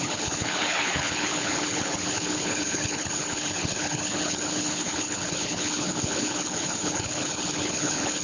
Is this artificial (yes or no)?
yes